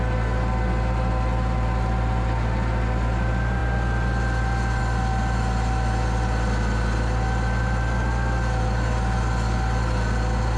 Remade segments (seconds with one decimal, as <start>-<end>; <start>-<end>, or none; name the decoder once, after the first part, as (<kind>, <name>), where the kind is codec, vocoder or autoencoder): none